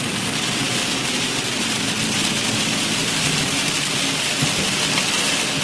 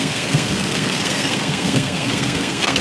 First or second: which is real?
first